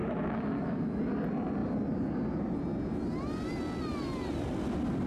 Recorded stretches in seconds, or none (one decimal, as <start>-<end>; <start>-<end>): 1.0-5.1